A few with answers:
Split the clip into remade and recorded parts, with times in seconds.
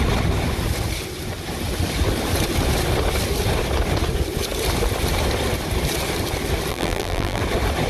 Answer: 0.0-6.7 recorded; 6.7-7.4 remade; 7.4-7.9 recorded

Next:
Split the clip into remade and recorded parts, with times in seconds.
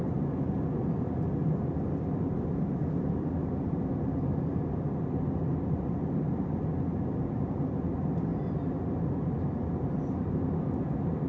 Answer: 0.0-11.3 recorded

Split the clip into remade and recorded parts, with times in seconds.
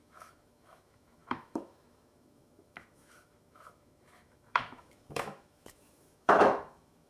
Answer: 0.0-7.1 remade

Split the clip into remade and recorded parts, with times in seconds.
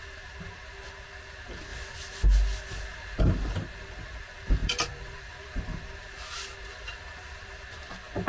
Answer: 0.0-4.6 recorded; 4.6-6.0 remade; 6.0-8.3 recorded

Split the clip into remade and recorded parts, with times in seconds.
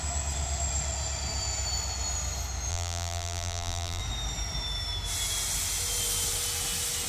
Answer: 0.0-2.7 recorded; 2.7-4.0 remade; 4.0-7.1 recorded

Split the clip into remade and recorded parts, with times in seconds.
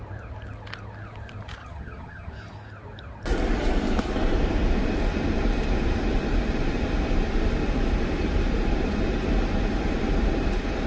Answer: 0.0-1.6 recorded; 1.6-2.3 remade; 2.3-10.9 recorded